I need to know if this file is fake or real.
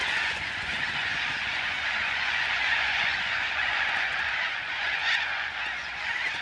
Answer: fake